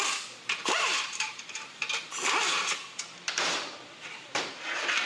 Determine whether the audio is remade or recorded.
remade